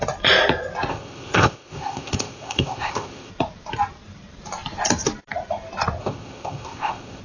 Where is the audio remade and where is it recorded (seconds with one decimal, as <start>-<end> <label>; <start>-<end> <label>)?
0.0-0.9 recorded; 0.9-3.3 remade; 3.3-6.0 recorded; 6.0-7.2 remade